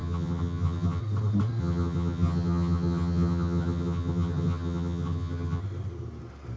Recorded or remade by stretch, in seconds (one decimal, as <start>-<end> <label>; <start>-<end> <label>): 0.0-1.0 remade; 1.0-1.6 recorded; 1.6-5.6 remade; 5.6-6.6 recorded